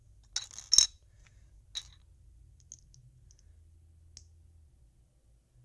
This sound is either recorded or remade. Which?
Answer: recorded